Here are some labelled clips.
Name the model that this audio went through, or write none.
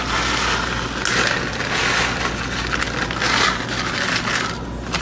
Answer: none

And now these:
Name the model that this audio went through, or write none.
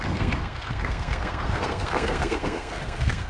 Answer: codec, SNAC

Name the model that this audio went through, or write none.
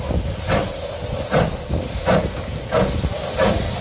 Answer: none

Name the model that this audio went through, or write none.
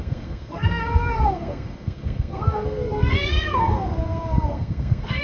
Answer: codec, SNAC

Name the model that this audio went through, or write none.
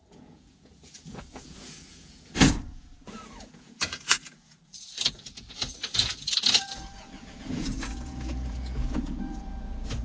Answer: vocoder, Vocos